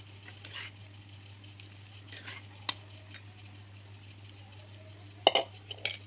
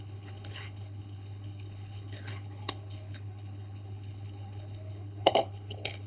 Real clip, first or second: first